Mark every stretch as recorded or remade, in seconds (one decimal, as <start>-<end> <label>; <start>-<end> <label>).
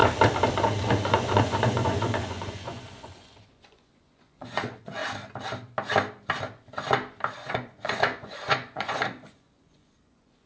0.0-0.6 recorded; 0.6-5.0 remade; 5.0-7.4 recorded; 7.4-10.5 remade